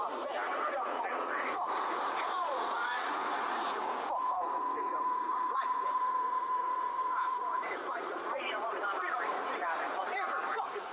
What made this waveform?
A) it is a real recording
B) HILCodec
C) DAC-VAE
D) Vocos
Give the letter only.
D